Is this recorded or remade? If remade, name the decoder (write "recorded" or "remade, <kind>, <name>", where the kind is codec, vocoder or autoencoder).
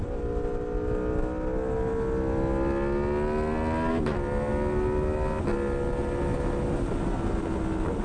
recorded